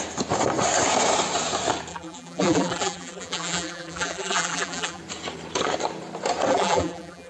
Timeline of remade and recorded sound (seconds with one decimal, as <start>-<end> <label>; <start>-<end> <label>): 0.0-1.9 recorded; 1.9-5.0 remade; 5.0-6.5 recorded; 6.5-7.3 remade